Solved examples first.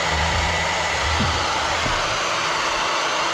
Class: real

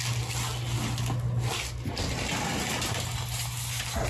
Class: real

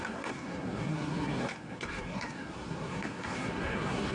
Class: fake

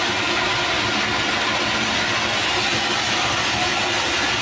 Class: real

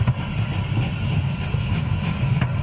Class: real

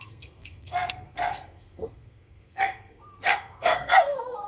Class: fake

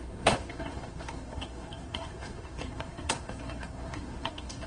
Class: fake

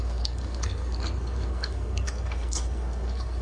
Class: fake